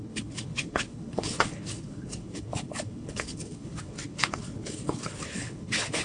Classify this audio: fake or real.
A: fake